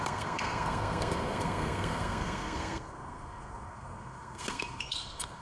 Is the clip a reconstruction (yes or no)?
yes